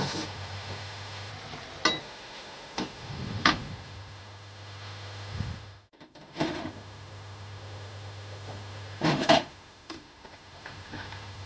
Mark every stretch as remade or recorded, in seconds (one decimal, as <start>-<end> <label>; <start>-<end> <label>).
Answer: 0.0-1.3 remade; 1.3-2.0 recorded; 2.0-11.5 remade